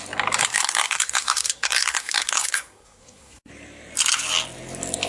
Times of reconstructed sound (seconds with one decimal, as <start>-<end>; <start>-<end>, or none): 0.4-3.5